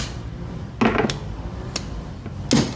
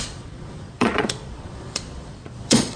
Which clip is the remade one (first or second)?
second